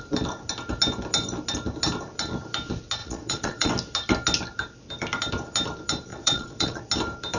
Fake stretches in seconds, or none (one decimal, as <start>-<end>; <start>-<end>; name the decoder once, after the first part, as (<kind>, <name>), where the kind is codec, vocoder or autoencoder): 3.0-3.7 (vocoder, Vocos); 6.1-6.8